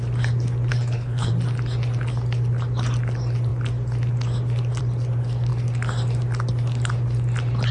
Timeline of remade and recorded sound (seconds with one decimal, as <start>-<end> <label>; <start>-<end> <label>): 0.0-0.7 recorded; 0.7-1.3 remade; 1.3-7.7 recorded